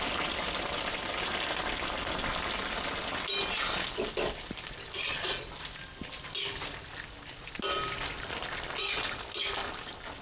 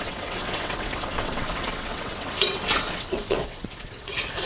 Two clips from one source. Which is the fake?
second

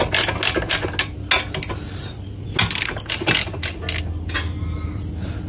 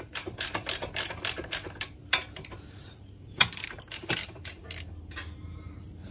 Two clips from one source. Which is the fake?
second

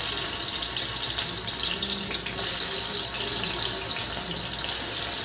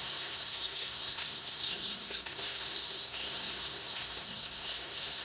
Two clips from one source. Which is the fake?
second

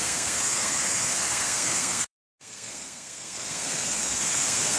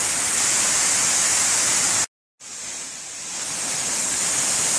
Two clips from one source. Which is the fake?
first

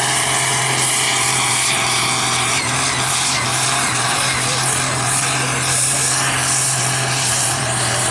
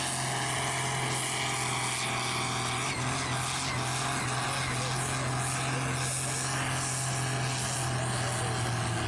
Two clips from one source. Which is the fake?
first